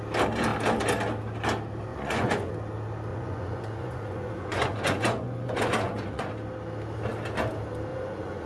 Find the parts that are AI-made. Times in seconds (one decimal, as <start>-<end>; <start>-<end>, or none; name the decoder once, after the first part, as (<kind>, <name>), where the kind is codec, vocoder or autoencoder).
1.9-2.5 (vocoder, Vocos); 3.1-6.3; 7.9-8.5